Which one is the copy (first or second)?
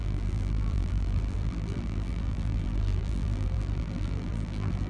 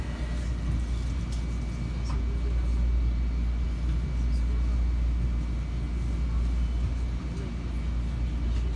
first